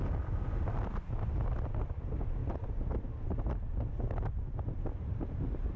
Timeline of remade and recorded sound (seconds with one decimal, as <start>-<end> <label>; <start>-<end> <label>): 0.0-5.8 recorded